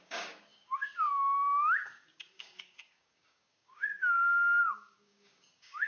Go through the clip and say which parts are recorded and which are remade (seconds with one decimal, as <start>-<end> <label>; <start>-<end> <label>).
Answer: 0.0-3.9 remade; 3.9-4.6 recorded; 4.6-5.9 remade